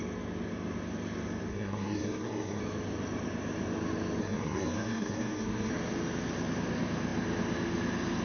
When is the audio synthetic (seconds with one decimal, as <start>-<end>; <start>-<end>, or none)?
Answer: 1.5-2.6; 4.2-5.7